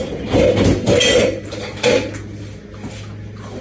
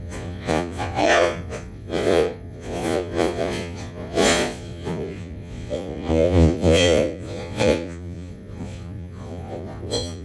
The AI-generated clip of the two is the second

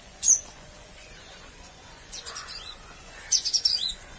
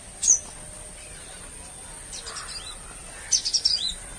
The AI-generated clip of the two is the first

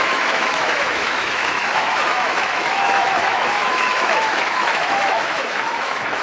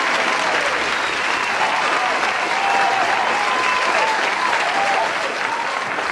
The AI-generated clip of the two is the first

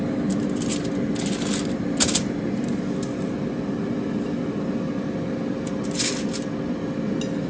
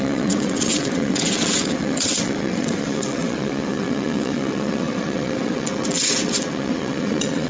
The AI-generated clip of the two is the second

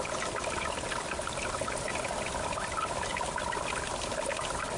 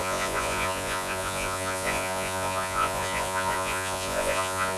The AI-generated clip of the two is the second